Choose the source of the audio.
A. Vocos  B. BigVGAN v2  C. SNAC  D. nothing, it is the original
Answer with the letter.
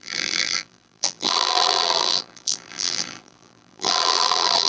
B